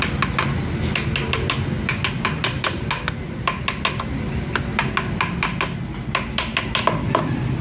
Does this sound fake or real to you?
real